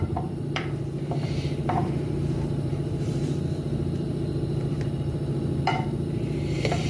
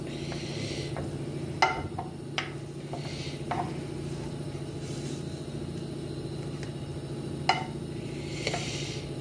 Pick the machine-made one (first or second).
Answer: first